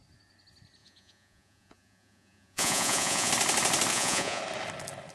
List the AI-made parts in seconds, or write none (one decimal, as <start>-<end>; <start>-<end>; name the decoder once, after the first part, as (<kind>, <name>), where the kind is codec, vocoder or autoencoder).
0.8-3.3 (vocoder, Vocos); 3.9-4.4